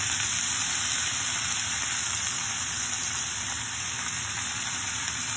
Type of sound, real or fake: real